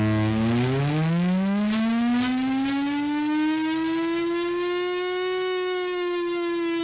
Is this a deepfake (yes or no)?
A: no